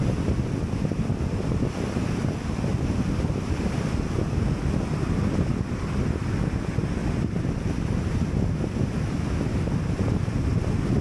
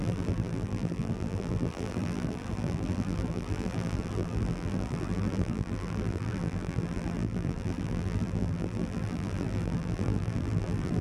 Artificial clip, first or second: second